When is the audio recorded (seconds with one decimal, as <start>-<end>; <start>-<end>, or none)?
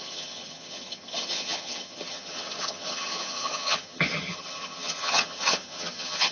none